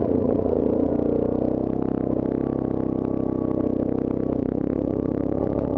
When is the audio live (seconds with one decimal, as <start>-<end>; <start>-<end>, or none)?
0.9-4.4